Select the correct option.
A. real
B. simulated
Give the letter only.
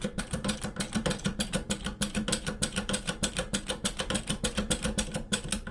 B